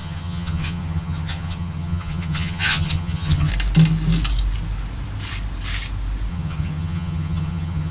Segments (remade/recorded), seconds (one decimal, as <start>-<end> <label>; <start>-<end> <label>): 0.0-3.5 remade; 3.5-6.3 recorded; 6.3-7.9 remade